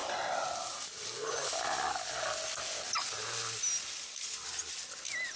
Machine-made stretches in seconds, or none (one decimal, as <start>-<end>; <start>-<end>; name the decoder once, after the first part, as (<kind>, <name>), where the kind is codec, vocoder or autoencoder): none